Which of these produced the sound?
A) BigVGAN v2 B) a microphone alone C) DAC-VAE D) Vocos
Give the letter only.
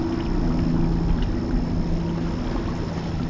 B